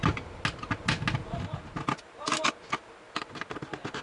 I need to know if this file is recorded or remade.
recorded